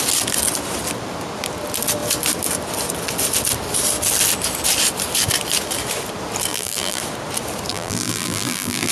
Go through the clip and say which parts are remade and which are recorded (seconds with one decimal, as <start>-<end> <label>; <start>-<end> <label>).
0.0-6.5 recorded; 6.5-7.0 remade; 7.0-7.7 recorded; 7.7-8.9 remade